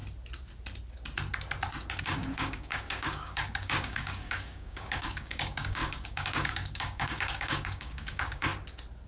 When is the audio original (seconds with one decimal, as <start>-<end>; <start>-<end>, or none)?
0.0-2.0; 8.5-9.1